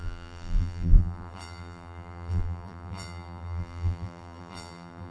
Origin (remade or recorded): remade